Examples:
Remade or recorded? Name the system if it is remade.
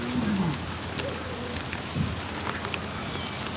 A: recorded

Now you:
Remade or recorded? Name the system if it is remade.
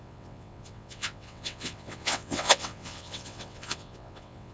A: remade, vocoder, WaveNeXt